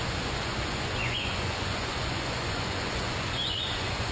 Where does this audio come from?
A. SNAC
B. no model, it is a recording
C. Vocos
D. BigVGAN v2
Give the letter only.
C